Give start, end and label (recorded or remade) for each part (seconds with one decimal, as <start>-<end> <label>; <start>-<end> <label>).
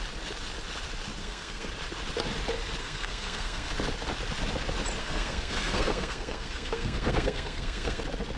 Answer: 0.0-1.2 recorded; 1.2-1.7 remade; 1.7-2.8 recorded; 2.8-3.7 remade; 3.7-5.0 recorded; 5.0-8.0 remade; 8.0-8.4 recorded